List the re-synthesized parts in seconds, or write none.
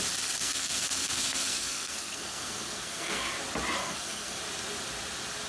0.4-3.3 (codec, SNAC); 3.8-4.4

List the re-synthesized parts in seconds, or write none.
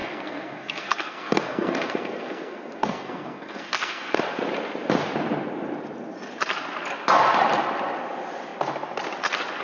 0.0-4.2 (codec, SNAC)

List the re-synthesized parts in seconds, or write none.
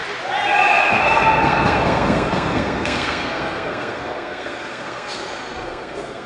0.8-6.3 (codec, SNAC)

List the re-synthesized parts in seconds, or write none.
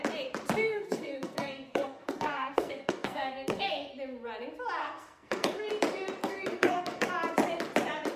0.6-3.9 (codec, SNAC); 4.8-5.7; 6.2-7.1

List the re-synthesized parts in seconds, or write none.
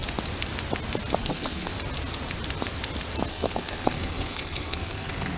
1.2-1.7 (codec, SNAC); 3.3-5.4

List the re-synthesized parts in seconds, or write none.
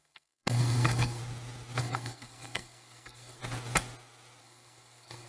0.0-1.2 (codec, SNAC); 1.8-3.4; 4.4-5.3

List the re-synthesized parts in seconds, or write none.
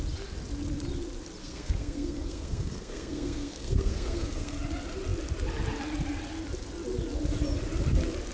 1.4-4.6 (codec, SNAC)